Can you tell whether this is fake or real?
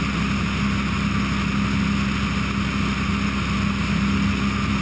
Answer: real